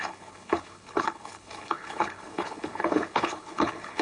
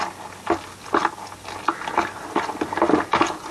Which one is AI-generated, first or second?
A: first